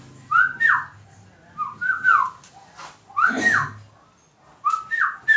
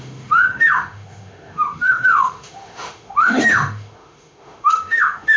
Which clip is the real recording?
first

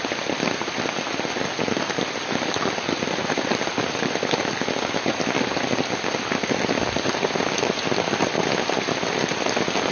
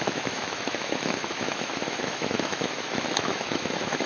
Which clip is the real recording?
first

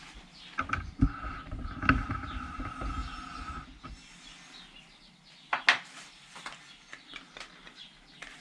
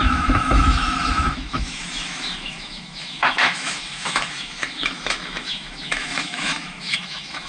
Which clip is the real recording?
first